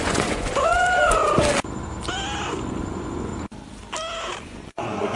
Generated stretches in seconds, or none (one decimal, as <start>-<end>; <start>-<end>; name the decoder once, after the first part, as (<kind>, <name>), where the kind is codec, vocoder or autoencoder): 0.0-1.2 (vocoder, Vocos); 2.5-3.3; 4.4-5.2